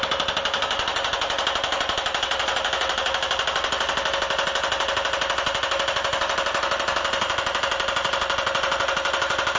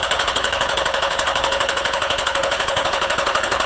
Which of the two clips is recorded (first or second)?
first